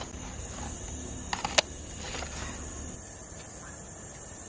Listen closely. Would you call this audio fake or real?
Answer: real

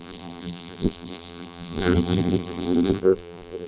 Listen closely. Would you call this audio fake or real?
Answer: fake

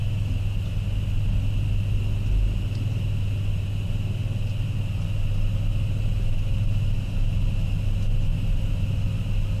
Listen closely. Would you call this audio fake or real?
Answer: real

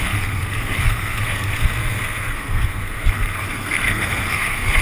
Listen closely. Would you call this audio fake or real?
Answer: fake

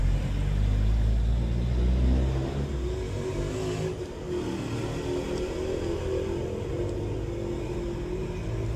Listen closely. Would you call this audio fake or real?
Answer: real